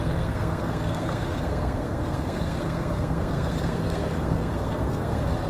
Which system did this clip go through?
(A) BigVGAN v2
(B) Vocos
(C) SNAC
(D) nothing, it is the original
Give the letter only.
C